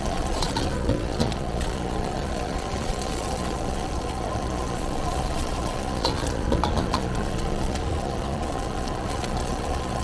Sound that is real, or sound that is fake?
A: fake